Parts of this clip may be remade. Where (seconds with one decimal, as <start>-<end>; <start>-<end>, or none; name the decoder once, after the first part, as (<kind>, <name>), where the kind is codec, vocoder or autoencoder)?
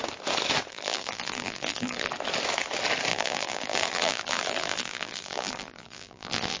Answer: 0.7-2.1 (vocoder, BigVGAN v2); 3.1-6.6